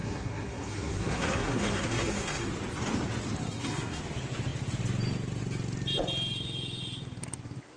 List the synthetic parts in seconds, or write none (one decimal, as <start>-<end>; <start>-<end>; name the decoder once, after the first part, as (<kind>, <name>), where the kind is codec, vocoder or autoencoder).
0.0-2.5 (codec, SNAC); 3.4-4.0